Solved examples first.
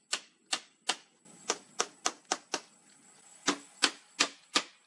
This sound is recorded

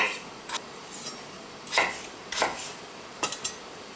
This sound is recorded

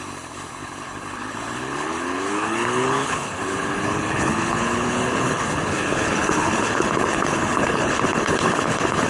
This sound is remade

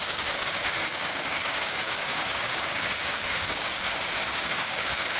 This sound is remade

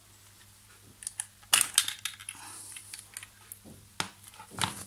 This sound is recorded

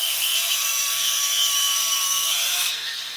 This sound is remade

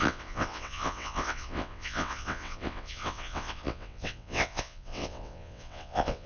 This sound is remade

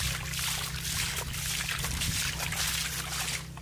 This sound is recorded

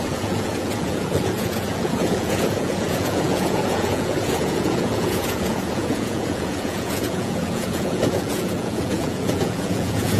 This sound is remade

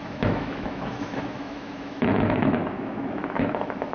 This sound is remade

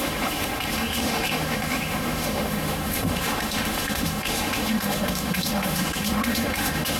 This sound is remade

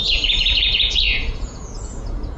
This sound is remade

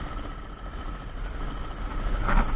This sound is recorded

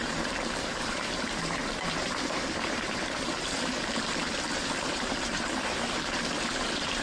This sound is remade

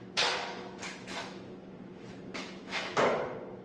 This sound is remade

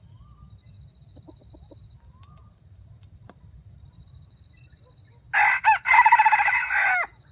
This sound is recorded